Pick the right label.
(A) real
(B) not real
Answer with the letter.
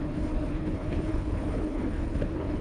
B